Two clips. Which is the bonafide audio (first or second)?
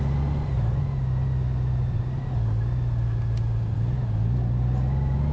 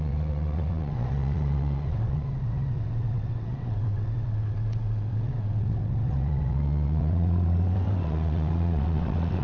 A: first